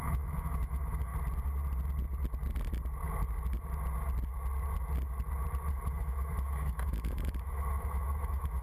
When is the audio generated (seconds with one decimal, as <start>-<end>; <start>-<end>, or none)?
0.0-1.1; 5.7-8.6